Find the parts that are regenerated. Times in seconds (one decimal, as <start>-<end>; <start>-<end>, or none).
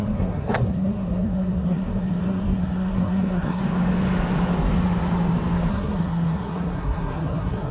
0.0-3.6; 5.7-7.7